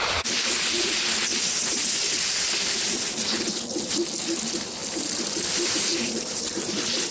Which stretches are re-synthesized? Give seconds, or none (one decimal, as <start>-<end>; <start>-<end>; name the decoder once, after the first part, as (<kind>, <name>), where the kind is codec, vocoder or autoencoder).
0.0-1.3 (vocoder, BigVGAN v2); 3.9-4.8; 5.5-7.1